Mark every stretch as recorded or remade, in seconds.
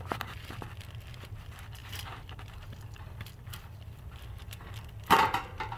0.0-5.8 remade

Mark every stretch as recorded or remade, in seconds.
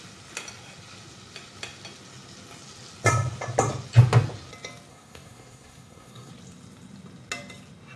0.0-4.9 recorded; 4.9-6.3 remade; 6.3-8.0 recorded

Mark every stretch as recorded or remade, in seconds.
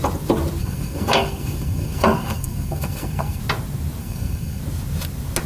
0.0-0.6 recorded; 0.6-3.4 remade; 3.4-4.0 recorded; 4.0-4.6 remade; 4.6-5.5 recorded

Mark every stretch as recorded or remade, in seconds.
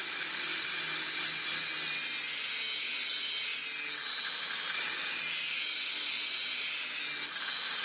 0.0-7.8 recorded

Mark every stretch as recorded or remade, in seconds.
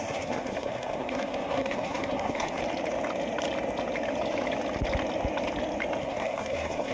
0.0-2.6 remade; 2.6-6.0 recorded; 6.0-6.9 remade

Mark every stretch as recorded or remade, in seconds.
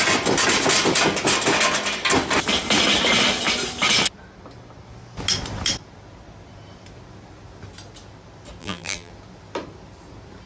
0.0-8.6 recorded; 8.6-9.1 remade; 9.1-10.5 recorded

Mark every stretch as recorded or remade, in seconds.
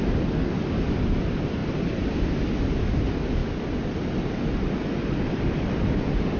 0.0-1.6 recorded; 1.6-2.6 remade; 2.6-6.4 recorded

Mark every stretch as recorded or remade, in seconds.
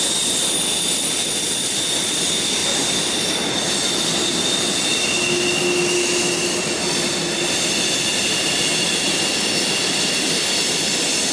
0.0-11.3 recorded